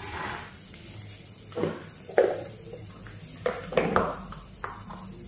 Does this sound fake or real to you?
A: real